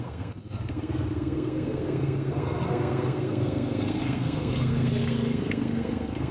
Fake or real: fake